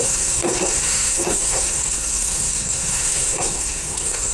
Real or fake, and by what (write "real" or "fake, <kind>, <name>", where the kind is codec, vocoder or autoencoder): fake, codec, SNAC